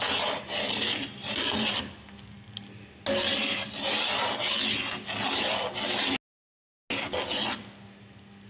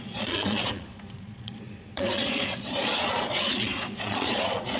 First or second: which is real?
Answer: first